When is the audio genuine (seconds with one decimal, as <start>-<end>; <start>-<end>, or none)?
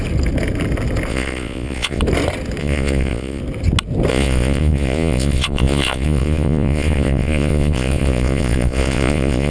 0.0-1.1; 2.0-2.6; 3.4-4.1